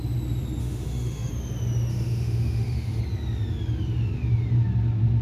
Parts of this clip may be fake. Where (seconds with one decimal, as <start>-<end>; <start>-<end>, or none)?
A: 0.6-1.3; 1.9-3.0